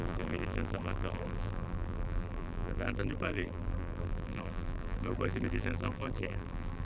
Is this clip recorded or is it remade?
remade